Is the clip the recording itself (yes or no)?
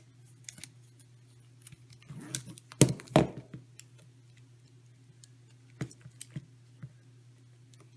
yes